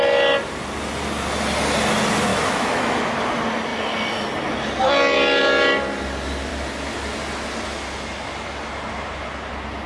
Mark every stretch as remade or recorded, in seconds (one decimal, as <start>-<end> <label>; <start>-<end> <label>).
0.0-2.3 recorded; 2.3-3.1 remade; 3.1-9.9 recorded